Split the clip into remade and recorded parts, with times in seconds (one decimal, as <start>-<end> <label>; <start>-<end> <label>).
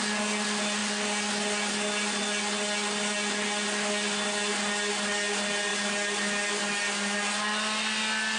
0.0-8.4 recorded